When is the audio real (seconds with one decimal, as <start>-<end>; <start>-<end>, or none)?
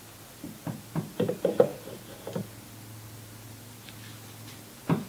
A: 0.0-5.1